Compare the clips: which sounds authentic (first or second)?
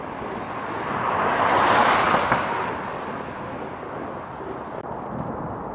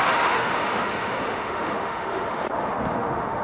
first